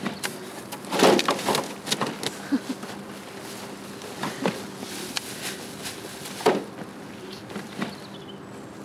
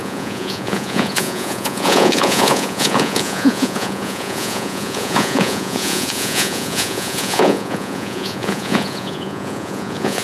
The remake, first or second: second